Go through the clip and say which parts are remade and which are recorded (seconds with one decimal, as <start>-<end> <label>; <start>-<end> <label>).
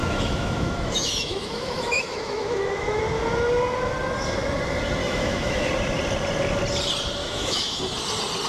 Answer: 0.0-3.0 remade; 3.0-5.0 recorded; 5.0-5.7 remade; 5.7-7.2 recorded; 7.2-7.8 remade; 7.8-8.5 recorded